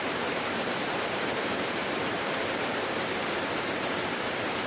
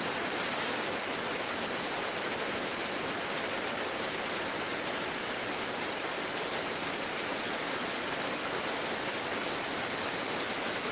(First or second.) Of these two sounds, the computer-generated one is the first